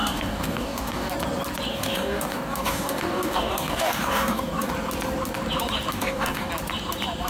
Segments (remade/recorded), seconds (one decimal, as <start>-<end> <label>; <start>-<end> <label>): 0.0-1.1 remade; 1.1-1.7 recorded; 1.7-4.7 remade; 4.7-5.9 recorded; 5.9-6.5 remade; 6.5-7.3 recorded